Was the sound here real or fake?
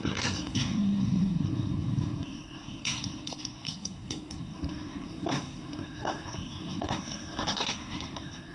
fake